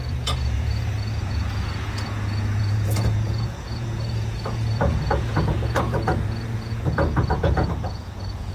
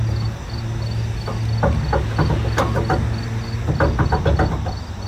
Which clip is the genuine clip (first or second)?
second